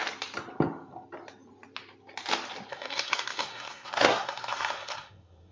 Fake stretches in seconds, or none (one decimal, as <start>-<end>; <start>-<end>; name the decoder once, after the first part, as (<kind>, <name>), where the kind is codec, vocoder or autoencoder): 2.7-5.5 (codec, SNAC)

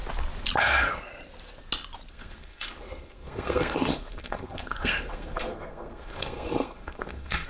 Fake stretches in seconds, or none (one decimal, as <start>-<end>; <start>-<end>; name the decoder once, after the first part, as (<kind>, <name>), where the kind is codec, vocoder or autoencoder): 0.6-1.1 (codec, SNAC); 2.1-7.5

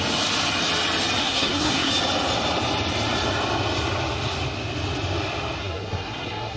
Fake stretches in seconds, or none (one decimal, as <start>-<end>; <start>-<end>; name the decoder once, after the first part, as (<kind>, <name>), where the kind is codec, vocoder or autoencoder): 1.2-1.9 (codec, SNAC); 5.6-6.6

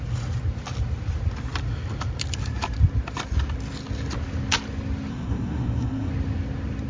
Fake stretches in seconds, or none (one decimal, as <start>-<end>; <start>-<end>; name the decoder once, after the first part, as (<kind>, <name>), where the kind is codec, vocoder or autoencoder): 5.1-6.1 (codec, SNAC)

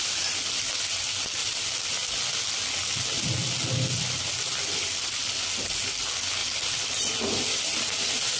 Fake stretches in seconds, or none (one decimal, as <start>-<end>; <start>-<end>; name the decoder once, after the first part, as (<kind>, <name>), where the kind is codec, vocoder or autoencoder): none

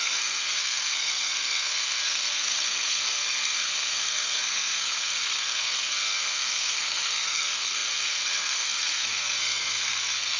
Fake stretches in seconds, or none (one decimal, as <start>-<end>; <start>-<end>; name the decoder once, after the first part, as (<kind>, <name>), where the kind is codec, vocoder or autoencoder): 0.0-10.4 (codec, SNAC)

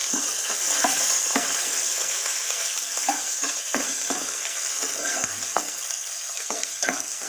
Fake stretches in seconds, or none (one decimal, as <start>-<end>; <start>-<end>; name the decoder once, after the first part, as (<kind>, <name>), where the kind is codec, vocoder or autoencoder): 0.0-7.3 (codec, SNAC)

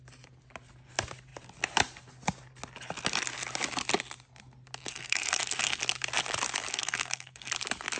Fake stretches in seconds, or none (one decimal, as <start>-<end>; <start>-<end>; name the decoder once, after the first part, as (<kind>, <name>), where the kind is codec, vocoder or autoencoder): 4.9-5.8 (codec, SNAC); 6.7-7.5